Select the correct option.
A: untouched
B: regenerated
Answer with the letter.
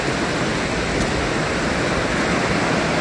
A